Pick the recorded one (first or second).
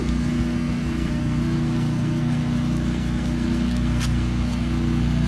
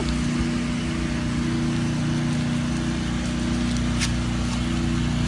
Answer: second